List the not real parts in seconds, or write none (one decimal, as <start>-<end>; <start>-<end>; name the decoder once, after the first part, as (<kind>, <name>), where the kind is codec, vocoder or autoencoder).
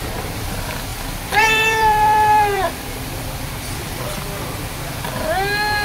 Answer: 0.9-4.2 (vocoder, BigVGAN v2)